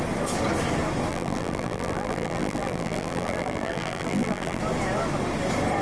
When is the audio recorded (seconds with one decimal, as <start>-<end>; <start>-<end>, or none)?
0.0-1.1; 4.6-5.8